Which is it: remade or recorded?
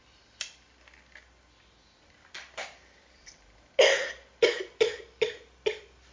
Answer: recorded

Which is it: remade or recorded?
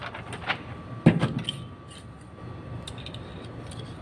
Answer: recorded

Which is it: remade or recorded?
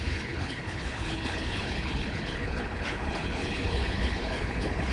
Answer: remade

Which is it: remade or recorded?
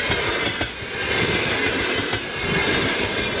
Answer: recorded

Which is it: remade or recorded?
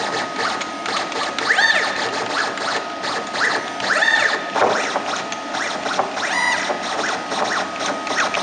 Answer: recorded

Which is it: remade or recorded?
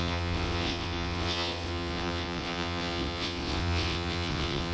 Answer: remade